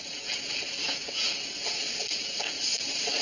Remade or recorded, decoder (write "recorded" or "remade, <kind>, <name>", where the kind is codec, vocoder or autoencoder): recorded